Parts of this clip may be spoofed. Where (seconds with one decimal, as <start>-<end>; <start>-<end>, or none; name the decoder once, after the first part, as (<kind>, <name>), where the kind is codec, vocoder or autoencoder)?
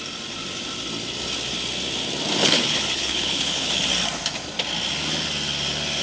2.4-3.8 (codec, HILCodec)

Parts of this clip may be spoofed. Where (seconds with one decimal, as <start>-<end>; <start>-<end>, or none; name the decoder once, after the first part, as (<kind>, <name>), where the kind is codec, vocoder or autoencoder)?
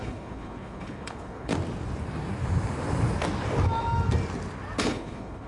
0.0-1.5 (codec, HILCodec); 4.8-5.5